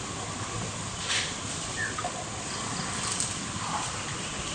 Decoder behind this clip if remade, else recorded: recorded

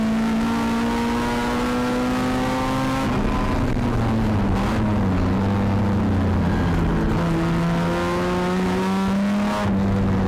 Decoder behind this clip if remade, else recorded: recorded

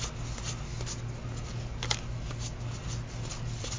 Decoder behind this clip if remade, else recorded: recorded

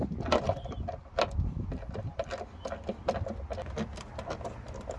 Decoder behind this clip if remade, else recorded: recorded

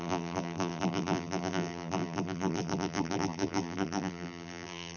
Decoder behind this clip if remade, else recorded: remade, vocoder, BigVGAN v2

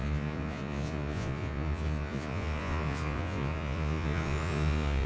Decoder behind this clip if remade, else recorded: remade, vocoder, Vocos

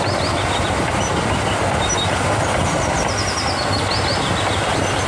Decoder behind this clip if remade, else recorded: recorded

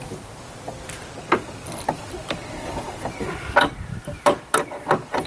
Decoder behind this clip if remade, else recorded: recorded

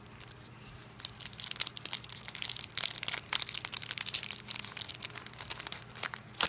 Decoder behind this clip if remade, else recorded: remade, vocoder, BigVGAN v2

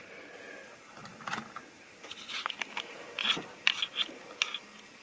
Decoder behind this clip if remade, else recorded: recorded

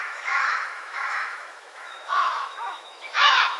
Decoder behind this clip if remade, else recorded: remade, autoencoder, DAC-VAE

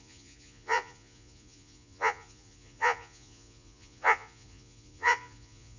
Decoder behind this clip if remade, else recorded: remade, vocoder, Vocos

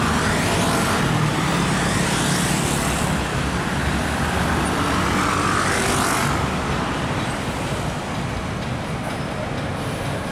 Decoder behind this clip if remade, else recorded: remade, vocoder, BigVGAN v2